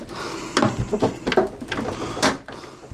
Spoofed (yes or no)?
no